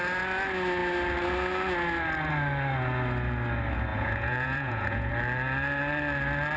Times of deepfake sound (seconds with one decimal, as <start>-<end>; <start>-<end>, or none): 3.9-5.1